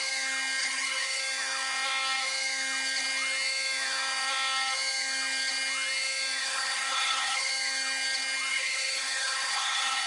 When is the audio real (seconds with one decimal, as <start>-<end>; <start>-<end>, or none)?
0.0-0.6; 1.2-6.4; 7.5-8.5

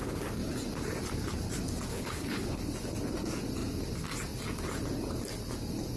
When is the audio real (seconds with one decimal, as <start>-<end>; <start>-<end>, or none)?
0.0-1.9; 2.6-6.0